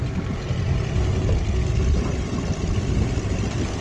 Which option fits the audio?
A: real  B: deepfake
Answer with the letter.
B